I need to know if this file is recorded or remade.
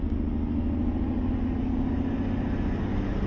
recorded